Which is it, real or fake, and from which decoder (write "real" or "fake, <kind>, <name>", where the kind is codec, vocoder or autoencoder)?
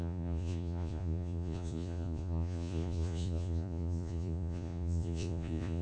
fake, vocoder, Vocos